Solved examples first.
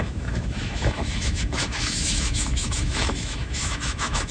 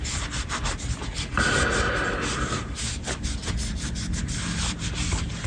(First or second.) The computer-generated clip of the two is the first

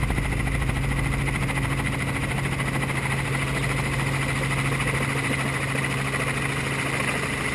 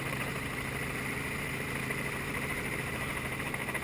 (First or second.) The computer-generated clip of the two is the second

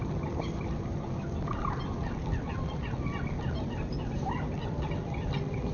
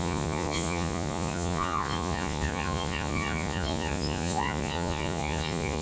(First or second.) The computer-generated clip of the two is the second